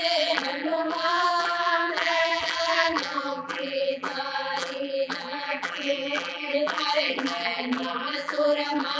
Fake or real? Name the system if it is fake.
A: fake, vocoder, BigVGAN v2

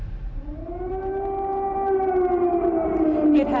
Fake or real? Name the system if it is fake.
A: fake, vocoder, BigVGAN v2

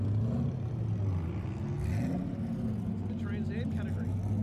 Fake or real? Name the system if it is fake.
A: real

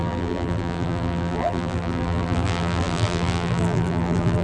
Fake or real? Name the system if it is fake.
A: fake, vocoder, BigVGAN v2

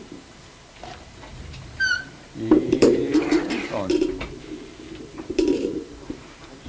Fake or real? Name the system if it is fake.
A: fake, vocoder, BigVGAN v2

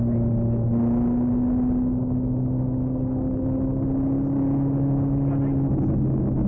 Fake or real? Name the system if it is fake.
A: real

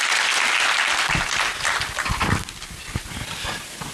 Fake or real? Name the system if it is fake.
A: real